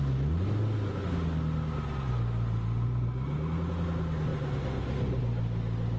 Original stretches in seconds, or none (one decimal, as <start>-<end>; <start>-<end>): 0.0-6.0